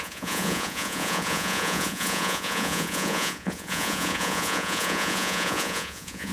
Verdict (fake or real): fake